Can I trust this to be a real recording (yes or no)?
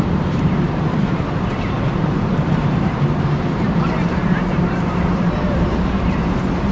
no